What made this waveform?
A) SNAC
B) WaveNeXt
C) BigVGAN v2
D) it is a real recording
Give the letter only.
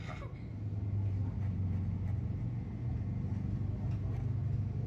D